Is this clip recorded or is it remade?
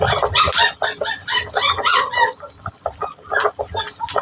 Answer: recorded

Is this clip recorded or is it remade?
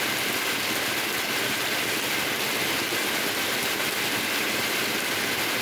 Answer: recorded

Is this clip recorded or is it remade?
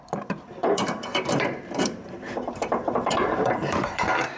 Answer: remade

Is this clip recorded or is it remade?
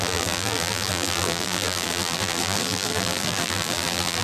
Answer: remade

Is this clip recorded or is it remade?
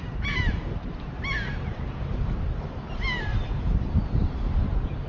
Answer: remade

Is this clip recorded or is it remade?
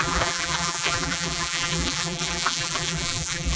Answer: remade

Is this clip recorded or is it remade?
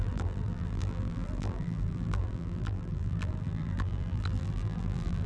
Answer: remade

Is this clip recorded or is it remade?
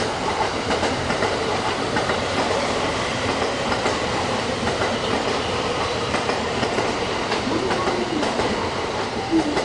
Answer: remade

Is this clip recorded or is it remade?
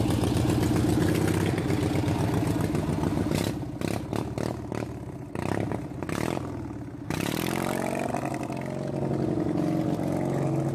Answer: recorded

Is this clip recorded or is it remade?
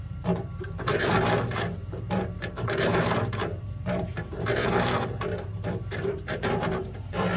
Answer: remade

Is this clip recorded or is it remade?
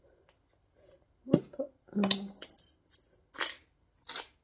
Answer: recorded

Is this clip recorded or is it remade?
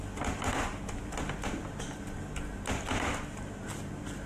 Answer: recorded